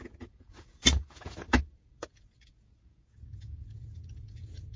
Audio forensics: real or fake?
fake